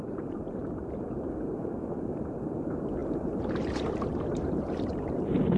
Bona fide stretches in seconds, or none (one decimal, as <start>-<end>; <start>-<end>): 0.6-1.8